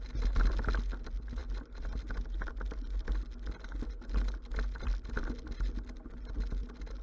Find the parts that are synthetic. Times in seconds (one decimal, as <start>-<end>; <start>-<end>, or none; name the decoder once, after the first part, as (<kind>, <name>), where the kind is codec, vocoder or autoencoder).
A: none